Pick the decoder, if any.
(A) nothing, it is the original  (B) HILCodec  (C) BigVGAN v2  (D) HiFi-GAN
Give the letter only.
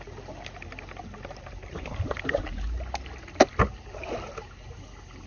A